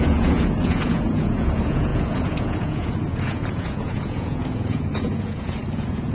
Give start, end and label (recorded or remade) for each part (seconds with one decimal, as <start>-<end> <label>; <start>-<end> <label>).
0.0-6.1 remade